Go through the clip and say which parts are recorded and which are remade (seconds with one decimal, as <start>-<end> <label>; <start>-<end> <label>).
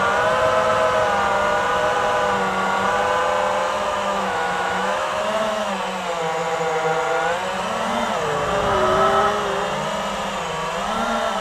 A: 0.0-3.6 recorded; 3.6-5.7 remade; 5.7-11.4 recorded